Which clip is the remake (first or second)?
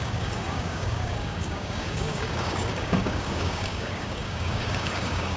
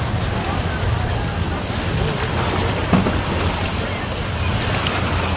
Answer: first